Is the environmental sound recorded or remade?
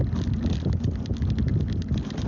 recorded